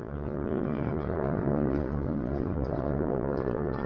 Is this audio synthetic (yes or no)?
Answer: yes